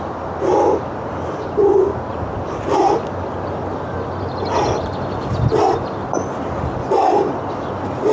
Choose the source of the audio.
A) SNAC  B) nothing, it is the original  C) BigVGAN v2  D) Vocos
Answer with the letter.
B